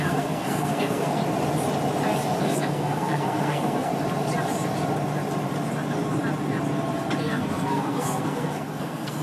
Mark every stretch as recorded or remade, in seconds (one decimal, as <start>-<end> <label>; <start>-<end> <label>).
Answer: 0.0-1.2 remade; 1.2-2.4 recorded; 2.4-3.9 remade; 3.9-7.2 recorded; 7.2-9.2 remade

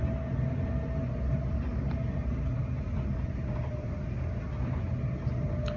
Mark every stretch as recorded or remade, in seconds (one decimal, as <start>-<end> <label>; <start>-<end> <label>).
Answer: 0.0-5.8 recorded

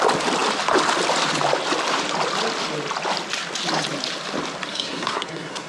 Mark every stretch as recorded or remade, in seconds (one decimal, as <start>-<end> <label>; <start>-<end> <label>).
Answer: 0.0-4.7 recorded; 4.7-5.7 remade

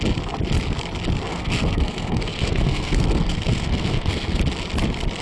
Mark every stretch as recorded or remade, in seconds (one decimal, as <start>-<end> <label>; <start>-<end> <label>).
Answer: 0.0-1.3 recorded; 1.3-4.4 remade; 4.4-5.2 recorded

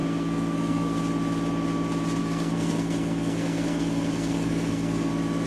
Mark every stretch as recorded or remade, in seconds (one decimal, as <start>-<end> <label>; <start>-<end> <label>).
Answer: 0.0-1.0 remade; 1.0-2.2 recorded; 2.2-5.1 remade; 5.1-5.5 recorded

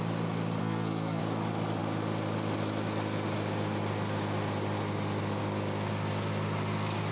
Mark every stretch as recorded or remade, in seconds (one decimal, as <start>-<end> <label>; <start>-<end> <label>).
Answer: 0.0-0.6 recorded; 0.6-1.2 remade; 1.2-7.1 recorded

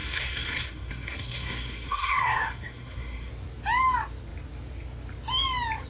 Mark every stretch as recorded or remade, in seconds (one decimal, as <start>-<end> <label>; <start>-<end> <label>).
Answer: 0.0-3.3 remade; 3.3-5.9 recorded

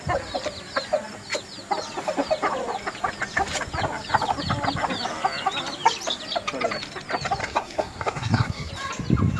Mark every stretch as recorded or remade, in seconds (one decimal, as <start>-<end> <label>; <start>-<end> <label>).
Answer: 0.0-7.4 recorded; 7.4-8.7 remade; 8.7-9.4 recorded